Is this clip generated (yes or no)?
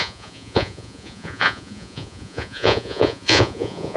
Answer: yes